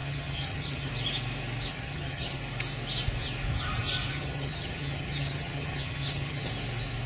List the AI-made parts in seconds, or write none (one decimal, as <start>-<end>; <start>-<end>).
0.0-0.9; 1.7-2.4; 4.1-6.5